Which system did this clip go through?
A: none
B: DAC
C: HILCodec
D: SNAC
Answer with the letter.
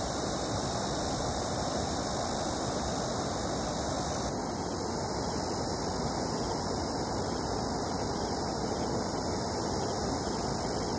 A